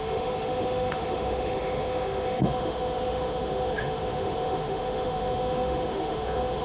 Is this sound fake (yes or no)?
yes